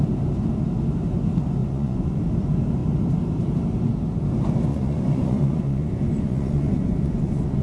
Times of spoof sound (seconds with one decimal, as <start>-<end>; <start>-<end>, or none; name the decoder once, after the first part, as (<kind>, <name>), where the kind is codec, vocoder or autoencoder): 1.6-2.2 (vocoder, Vocos); 4.7-7.6